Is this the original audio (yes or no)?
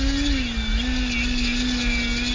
yes